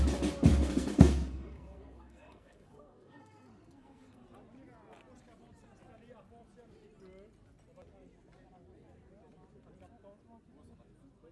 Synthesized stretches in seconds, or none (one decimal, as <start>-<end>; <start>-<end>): 0.5-4.2